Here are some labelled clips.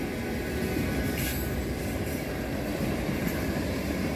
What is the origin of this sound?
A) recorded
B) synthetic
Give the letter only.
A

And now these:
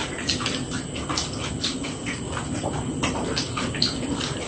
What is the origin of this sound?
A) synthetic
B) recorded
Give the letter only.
B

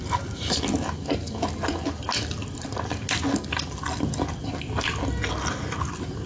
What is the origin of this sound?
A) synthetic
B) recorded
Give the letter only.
B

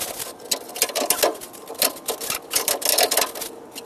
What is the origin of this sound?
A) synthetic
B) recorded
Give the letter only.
B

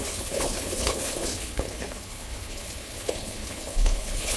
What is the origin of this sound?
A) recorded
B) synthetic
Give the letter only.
B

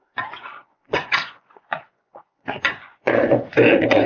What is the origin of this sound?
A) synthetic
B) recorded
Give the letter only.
A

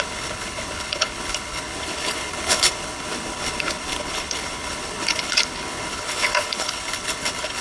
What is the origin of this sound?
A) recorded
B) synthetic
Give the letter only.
B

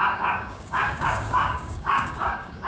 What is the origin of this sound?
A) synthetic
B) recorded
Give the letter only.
A